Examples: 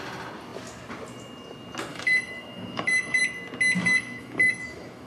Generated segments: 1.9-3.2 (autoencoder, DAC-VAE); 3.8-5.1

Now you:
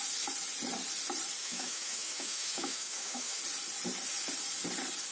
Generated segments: 1.4-3.4 (autoencoder, DAC-VAE)

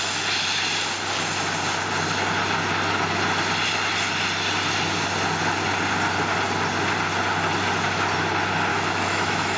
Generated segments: 8.7-9.6 (autoencoder, DAC-VAE)

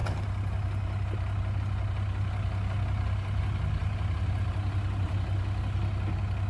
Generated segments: none

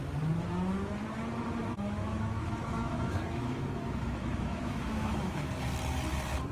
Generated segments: 1.6-5.5 (autoencoder, DAC-VAE)

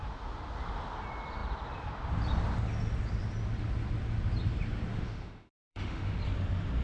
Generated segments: 4.9-6.2 (autoencoder, DAC-VAE)